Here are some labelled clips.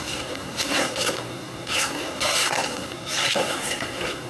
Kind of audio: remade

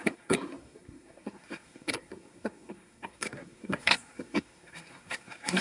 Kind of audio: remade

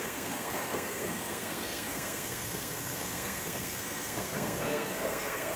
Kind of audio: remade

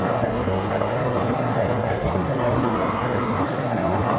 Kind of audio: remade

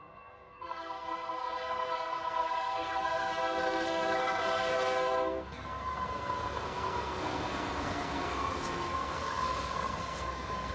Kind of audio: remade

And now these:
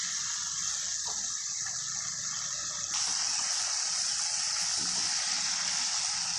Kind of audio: recorded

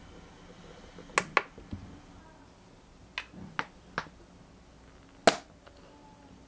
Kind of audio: recorded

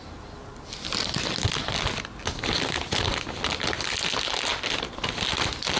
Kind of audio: recorded